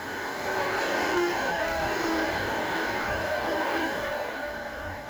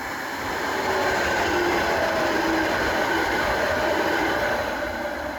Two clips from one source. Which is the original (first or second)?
second